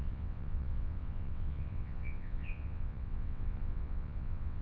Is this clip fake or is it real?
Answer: fake